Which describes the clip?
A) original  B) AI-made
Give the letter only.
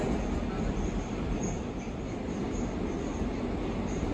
A